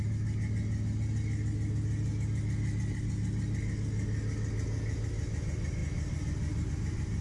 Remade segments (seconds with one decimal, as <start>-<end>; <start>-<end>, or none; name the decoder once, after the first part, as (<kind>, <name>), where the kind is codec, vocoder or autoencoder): none